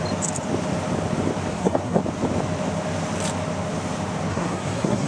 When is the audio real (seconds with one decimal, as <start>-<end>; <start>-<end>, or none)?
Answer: 0.0-1.5; 2.0-4.3